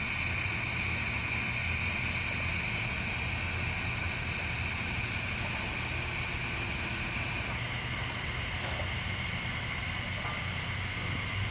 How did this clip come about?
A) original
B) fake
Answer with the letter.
A